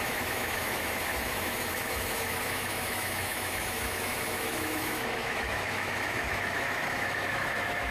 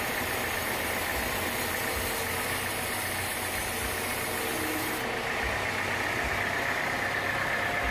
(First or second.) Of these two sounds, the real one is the second